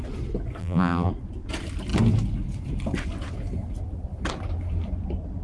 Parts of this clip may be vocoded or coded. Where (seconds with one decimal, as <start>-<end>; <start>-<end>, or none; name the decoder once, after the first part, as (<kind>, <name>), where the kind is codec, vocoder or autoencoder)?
0.6-1.1 (vocoder, BigVGAN v2)

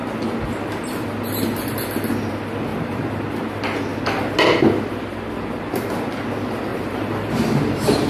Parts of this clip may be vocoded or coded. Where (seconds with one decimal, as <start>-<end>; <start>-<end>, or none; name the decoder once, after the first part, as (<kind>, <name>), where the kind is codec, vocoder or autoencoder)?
2.7-3.4 (vocoder, BigVGAN v2); 6.7-8.1

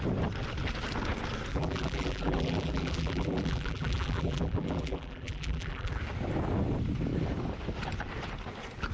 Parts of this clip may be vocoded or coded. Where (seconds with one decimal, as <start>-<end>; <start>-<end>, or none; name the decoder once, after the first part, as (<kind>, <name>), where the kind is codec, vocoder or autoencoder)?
1.5-6.0 (vocoder, BigVGAN v2)

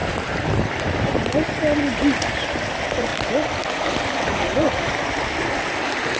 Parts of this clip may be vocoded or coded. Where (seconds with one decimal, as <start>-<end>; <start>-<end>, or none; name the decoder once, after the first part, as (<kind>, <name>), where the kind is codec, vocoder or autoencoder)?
0.0-2.4 (vocoder, BigVGAN v2)

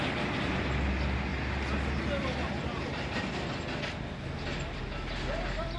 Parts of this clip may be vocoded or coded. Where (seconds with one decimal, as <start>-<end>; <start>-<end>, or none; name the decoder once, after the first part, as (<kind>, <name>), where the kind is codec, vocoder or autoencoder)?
none